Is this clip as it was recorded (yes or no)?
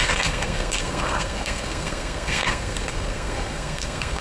no